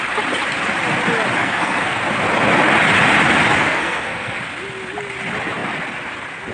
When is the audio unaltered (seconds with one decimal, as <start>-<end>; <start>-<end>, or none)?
0.0-1.4; 2.0-3.6; 4.4-6.5